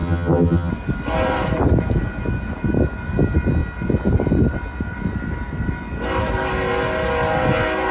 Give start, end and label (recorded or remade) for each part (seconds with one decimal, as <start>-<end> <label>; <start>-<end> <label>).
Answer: 0.0-0.7 remade; 0.7-7.9 recorded